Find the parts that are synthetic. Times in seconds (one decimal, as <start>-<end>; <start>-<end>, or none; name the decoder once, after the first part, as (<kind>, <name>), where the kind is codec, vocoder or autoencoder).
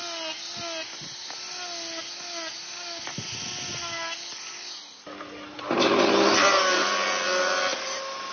none